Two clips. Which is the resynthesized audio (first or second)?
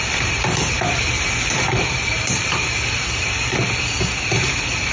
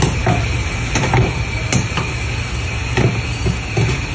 first